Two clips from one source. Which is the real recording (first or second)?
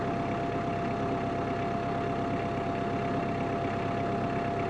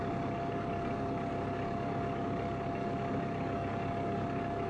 first